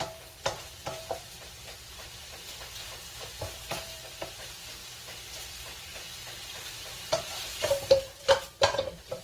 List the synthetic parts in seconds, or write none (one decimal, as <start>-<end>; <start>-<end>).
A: 0.0-4.8; 5.5-5.9; 6.7-9.2